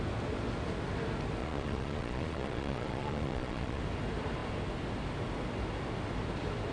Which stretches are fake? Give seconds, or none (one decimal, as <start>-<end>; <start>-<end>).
1.4-3.8